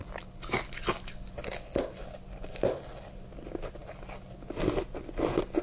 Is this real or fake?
real